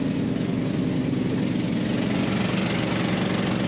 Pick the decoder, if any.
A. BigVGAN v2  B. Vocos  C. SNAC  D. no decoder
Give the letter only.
D